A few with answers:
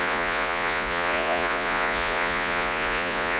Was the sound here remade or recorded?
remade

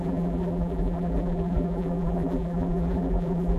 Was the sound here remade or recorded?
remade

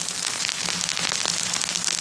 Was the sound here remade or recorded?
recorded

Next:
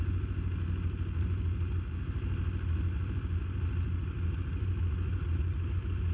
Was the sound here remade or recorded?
recorded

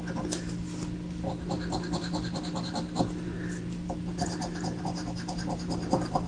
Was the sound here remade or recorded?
recorded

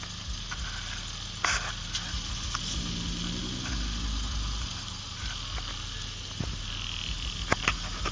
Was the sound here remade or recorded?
recorded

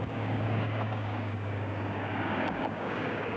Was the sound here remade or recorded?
remade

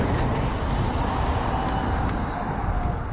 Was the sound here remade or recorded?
recorded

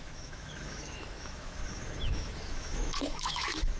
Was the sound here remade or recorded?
remade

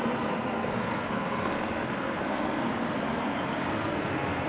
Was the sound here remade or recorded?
remade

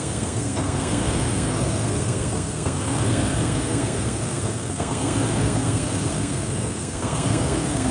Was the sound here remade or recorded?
remade